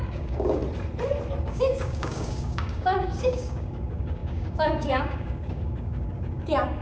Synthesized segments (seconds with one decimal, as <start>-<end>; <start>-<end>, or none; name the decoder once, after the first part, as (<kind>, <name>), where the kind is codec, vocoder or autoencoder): 0.0-0.6 (codec, DAC); 1.4-6.8